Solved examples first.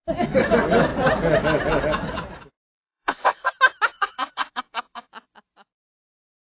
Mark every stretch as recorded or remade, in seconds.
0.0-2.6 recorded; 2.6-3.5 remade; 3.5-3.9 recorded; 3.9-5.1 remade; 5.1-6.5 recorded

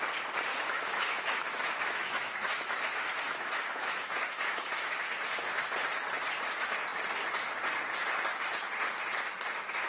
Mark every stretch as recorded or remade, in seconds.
0.0-0.5 recorded; 0.5-5.0 remade; 5.0-9.9 recorded